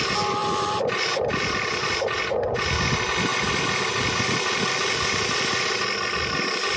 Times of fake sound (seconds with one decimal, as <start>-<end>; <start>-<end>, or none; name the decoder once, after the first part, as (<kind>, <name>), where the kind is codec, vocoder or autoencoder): 0.4-2.0 (vocoder, BigVGAN v2)